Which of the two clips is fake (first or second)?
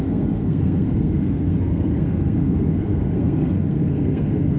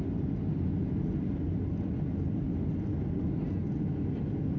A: first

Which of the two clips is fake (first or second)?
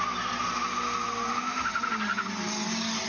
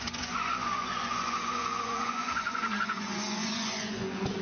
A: second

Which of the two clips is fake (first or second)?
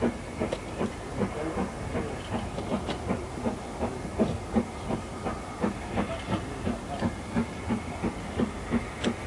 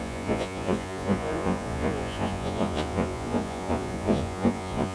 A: second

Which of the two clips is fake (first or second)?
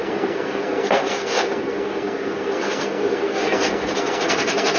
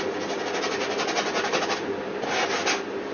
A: first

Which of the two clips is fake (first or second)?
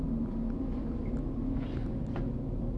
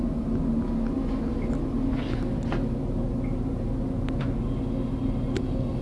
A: first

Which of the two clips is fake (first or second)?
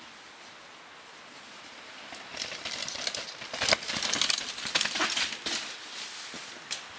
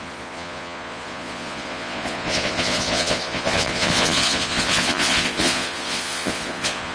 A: second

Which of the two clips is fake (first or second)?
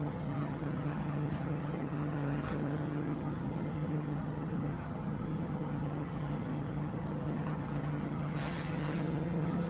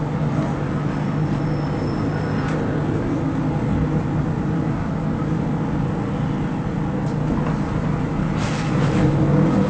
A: first